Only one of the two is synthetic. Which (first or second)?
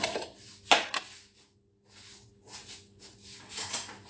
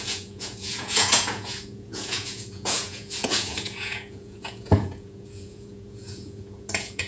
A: second